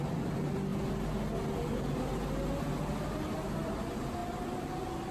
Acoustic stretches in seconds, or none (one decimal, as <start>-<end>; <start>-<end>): 0.0-5.1